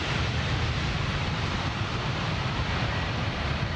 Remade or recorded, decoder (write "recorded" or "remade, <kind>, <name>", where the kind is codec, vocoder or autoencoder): remade, vocoder, BigVGAN v2